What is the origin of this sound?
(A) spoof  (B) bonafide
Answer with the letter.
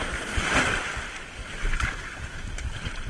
B